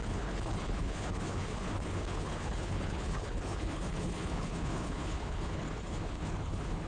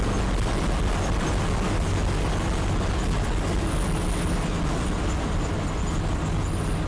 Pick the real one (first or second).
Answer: second